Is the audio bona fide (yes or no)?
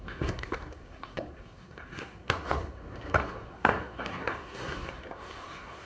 no